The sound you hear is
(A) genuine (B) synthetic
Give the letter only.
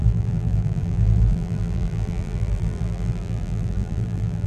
B